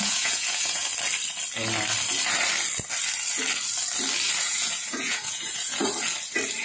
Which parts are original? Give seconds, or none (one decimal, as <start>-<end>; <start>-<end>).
0.9-4.4; 5.8-6.6